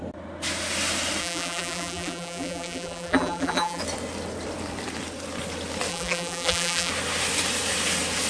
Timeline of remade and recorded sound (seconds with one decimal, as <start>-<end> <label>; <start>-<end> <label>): 0.0-1.2 recorded; 1.2-3.8 remade; 3.8-5.9 recorded; 5.9-6.9 remade; 6.9-8.3 recorded